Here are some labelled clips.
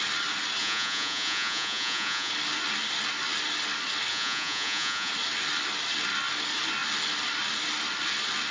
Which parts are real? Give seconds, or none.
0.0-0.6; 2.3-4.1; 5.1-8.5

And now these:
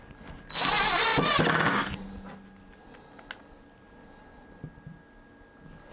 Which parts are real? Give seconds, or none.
0.0-5.9

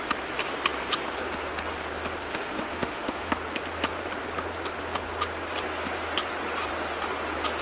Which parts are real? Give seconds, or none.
0.0-2.3; 3.3-7.6

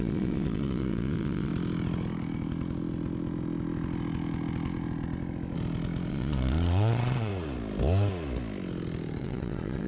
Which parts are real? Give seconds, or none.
1.5-6.1; 7.3-9.2

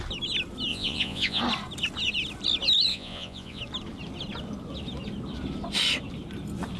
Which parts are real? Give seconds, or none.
0.0-0.7; 1.4-2.9; 3.6-6.8